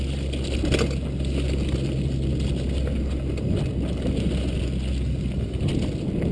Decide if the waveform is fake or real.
real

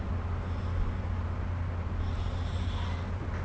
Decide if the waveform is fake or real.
real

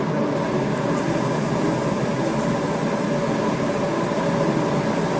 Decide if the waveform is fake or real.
real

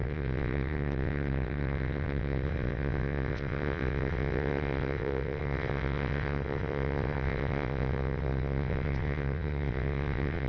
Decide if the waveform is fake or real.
fake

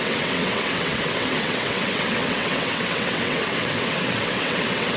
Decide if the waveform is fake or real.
fake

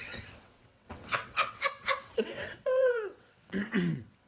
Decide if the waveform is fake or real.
fake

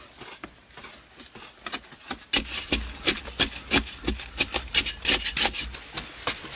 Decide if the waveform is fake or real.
real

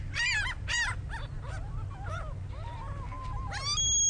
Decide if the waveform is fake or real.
real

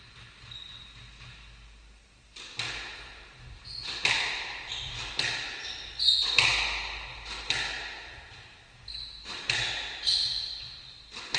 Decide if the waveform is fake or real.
real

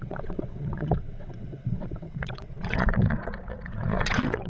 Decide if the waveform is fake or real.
fake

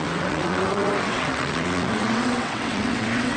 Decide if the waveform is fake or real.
fake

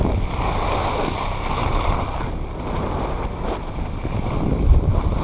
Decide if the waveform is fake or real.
real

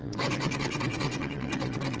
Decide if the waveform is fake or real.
fake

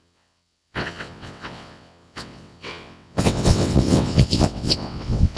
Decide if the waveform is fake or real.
fake